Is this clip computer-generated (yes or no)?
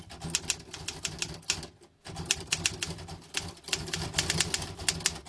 no